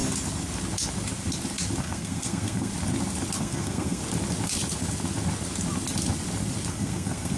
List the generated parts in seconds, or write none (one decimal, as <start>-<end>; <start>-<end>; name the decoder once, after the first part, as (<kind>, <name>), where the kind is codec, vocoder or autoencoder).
1.8-2.7 (codec, SNAC); 3.4-4.0; 6.7-7.4